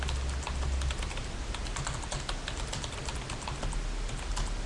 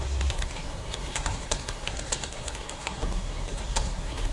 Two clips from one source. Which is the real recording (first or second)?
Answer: first